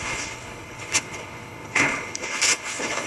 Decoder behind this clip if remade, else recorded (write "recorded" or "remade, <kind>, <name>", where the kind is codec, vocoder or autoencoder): remade, codec, HILCodec